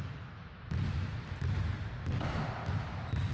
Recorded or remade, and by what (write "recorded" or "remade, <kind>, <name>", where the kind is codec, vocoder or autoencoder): recorded